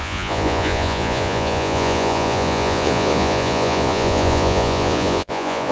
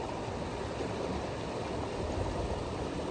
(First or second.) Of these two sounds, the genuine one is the second